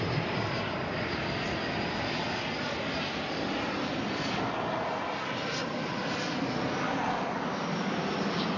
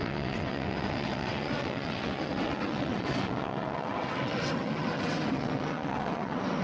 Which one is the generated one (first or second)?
second